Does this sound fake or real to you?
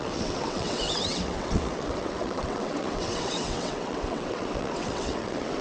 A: fake